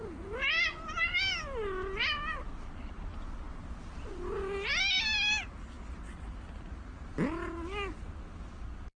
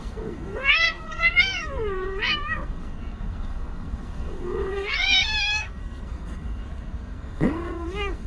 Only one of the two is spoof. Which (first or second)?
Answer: second